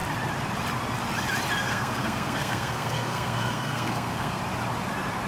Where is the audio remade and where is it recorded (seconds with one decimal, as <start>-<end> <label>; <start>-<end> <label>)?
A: 0.0-1.6 recorded; 1.6-4.4 remade; 4.4-5.3 recorded